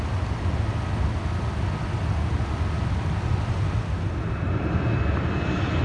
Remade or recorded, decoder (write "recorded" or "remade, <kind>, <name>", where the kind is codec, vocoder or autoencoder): recorded